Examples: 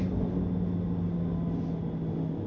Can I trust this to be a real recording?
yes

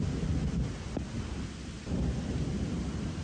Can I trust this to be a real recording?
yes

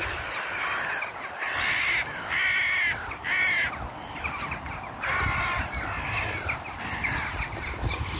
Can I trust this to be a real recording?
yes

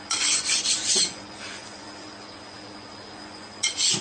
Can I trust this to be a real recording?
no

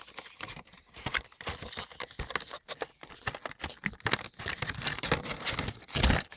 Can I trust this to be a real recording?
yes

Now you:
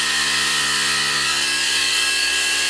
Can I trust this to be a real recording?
no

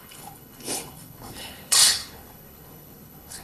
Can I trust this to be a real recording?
no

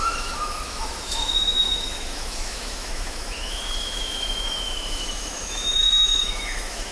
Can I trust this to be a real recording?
no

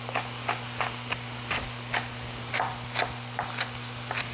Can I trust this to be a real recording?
yes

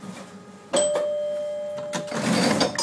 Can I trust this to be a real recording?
yes